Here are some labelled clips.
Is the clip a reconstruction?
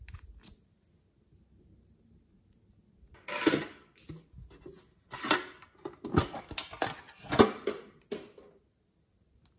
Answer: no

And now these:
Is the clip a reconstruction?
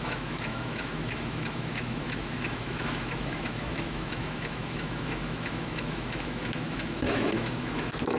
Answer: yes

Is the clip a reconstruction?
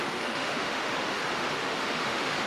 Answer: yes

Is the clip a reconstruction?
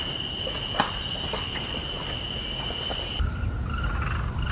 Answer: no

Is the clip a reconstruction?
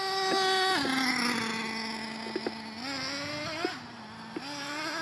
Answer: no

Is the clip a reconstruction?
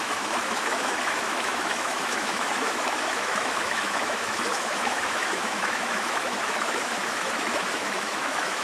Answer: yes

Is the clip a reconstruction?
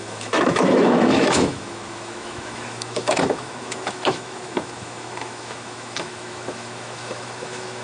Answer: yes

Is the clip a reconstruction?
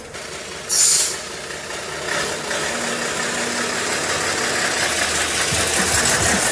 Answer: no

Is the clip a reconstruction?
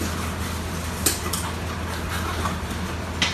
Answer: no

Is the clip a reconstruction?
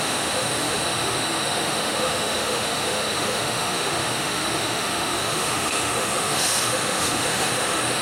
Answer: yes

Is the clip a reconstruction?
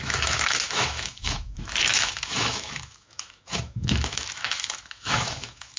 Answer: yes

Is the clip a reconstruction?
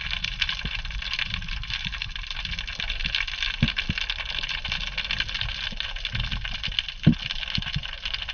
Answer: no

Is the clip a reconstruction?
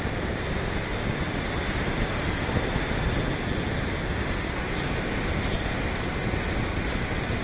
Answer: no